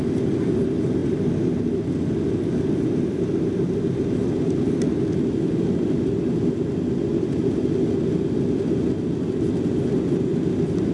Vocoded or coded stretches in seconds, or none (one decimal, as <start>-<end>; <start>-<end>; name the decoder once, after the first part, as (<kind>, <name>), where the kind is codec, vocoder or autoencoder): none